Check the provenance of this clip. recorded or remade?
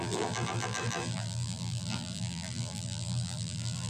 remade